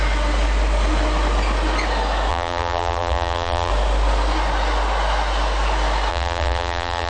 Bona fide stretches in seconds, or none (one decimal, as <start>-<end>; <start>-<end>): 0.0-2.3; 3.7-6.1